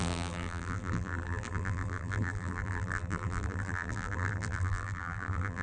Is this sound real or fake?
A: fake